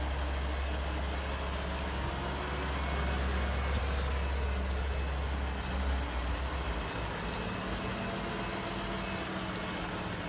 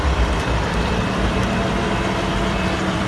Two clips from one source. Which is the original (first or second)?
first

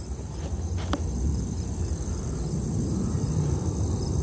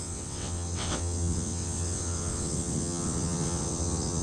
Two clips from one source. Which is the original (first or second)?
first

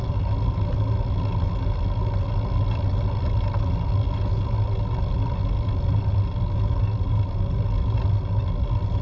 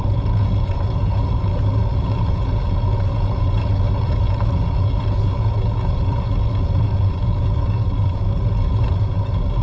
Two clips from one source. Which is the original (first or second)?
first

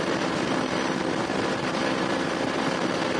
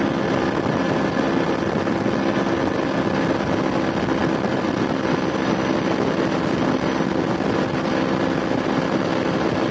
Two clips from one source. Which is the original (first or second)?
second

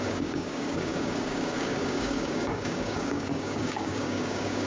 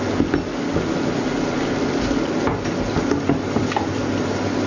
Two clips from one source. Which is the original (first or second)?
second